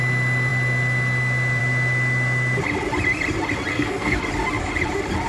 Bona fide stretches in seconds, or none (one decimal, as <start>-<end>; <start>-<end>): 0.0-3.7; 4.2-5.3